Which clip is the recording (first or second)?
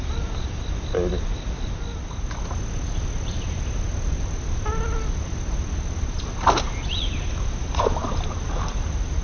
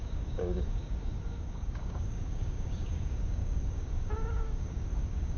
first